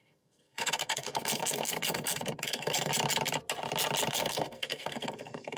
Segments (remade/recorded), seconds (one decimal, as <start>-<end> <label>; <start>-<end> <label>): 0.0-2.9 remade; 2.9-4.1 recorded; 4.1-5.6 remade